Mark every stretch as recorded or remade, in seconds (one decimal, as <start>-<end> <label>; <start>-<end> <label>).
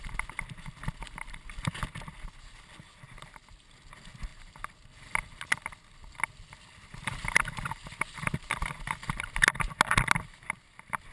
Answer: 0.0-11.1 recorded